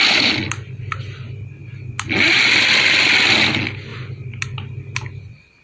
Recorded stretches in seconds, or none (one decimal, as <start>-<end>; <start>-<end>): 0.0-5.6